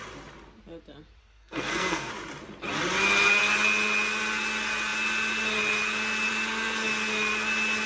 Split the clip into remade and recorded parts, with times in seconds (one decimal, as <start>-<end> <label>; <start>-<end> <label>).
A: 0.0-1.2 recorded; 1.2-2.1 remade; 2.1-7.9 recorded